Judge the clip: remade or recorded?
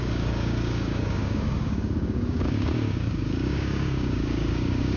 remade